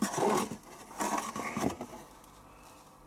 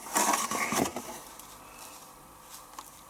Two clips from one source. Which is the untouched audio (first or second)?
first